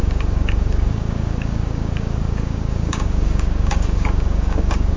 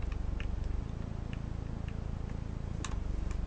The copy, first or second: first